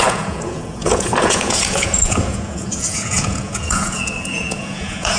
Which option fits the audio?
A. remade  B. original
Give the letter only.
A